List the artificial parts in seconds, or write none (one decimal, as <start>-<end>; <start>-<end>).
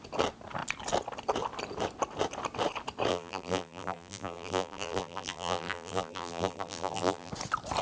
3.1-7.3